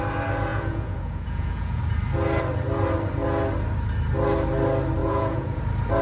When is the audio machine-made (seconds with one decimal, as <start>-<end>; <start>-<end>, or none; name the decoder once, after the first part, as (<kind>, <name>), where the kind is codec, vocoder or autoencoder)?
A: 0.5-1.8 (vocoder, Vocos); 5.0-5.6

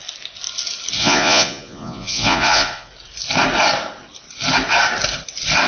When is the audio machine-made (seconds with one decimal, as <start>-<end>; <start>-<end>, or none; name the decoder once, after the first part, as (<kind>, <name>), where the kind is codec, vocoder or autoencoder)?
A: 1.0-2.9 (vocoder, Vocos)

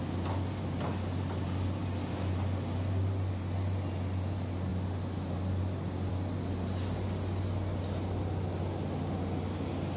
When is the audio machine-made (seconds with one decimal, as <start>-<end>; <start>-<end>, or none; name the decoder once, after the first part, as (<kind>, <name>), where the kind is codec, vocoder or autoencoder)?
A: none

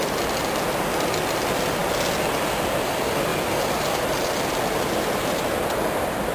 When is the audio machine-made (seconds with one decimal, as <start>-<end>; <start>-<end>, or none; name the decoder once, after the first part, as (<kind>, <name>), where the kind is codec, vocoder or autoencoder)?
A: none